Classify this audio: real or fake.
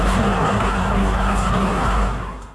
fake